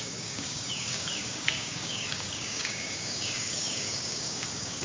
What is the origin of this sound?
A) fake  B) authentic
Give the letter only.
A